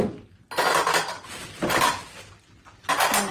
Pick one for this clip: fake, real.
real